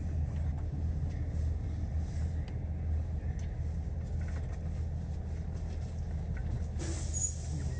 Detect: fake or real real